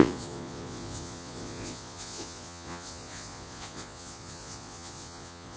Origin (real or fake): fake